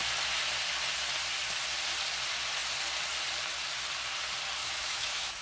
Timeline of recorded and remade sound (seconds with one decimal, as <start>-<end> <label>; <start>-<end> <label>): 0.0-4.6 recorded; 4.6-5.4 remade